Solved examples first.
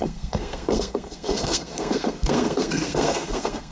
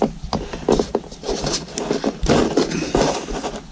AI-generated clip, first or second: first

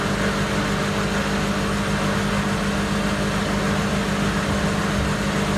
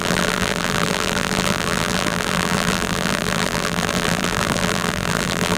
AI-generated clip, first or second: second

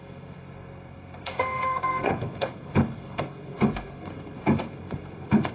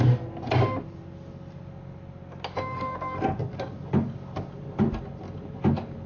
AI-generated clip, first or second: first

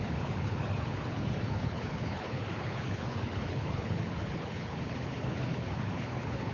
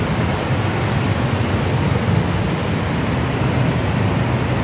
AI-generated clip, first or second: first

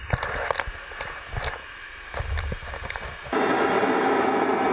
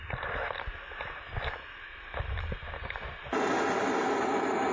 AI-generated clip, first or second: second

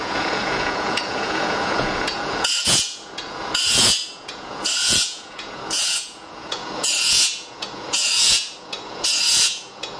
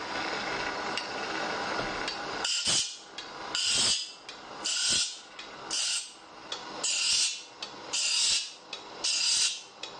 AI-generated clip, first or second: first